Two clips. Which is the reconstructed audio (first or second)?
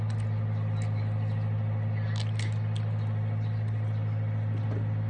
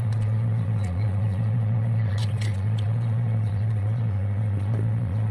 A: second